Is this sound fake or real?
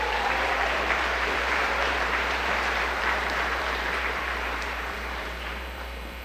fake